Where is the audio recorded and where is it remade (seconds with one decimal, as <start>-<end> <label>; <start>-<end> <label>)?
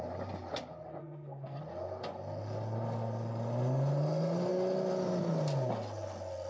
0.0-1.0 recorded; 1.0-1.6 remade; 1.6-6.5 recorded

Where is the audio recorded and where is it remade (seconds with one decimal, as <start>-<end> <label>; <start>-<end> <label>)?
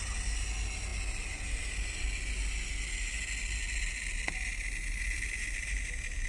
0.0-6.3 recorded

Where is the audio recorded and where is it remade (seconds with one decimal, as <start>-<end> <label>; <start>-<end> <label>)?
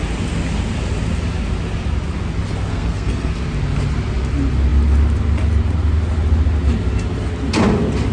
0.0-2.7 recorded; 2.7-3.3 remade; 3.3-8.1 recorded